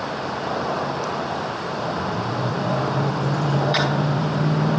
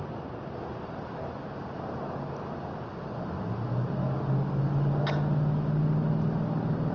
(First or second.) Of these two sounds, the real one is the second